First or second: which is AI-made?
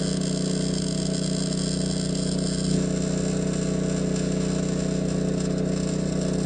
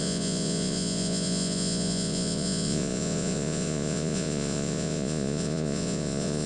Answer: second